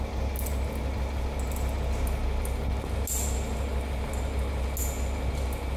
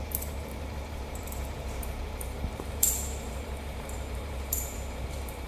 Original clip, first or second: first